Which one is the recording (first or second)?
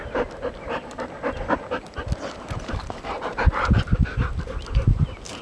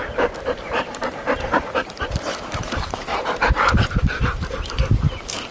first